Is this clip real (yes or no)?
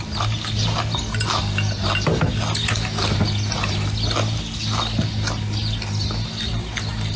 yes